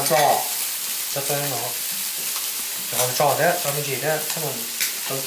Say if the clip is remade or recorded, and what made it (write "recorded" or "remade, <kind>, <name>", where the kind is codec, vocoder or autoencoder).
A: recorded